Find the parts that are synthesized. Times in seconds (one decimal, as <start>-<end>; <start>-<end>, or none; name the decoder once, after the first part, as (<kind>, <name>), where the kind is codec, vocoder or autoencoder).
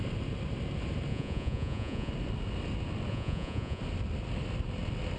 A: 1.1-2.1 (vocoder, Vocos); 3.1-3.8